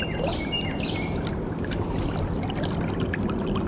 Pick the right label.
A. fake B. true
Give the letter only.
B